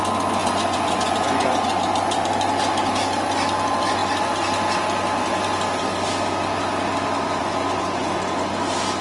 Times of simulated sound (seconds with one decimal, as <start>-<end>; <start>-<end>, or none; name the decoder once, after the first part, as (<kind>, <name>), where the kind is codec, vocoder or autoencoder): 0.4-1.8 (vocoder, Vocos); 7.4-8.5